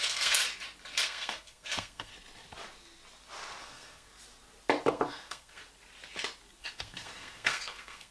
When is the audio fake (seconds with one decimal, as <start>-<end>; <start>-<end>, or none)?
0.0-0.4; 1.0-2.1; 3.6-4.1; 4.9-5.6; 6.6-8.1